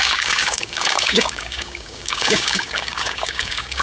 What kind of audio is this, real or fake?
fake